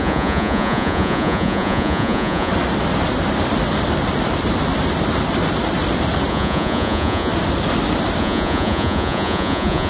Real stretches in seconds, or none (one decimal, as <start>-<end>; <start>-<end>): 2.5-6.3; 7.3-8.2